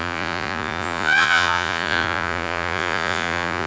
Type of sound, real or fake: fake